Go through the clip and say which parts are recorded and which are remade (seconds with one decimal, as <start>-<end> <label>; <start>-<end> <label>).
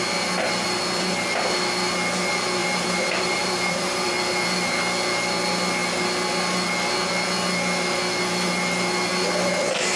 0.0-2.6 recorded; 2.6-4.1 remade; 4.1-10.0 recorded